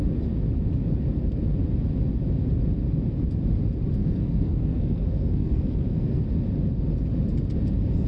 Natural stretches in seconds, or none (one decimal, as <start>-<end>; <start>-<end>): 0.0-3.9; 6.2-8.1